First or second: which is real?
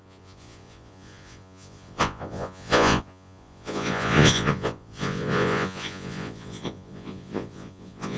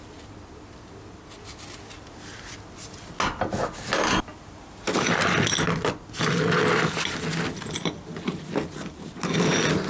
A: second